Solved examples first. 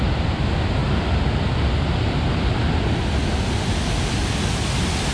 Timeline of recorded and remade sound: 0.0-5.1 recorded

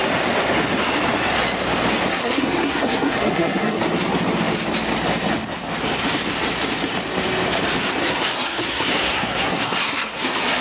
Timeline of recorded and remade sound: 0.0-2.1 recorded; 2.1-3.8 remade; 3.8-8.0 recorded; 8.0-10.6 remade

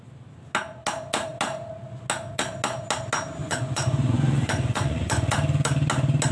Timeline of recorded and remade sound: 0.0-3.4 recorded; 3.4-5.3 remade; 5.3-6.3 recorded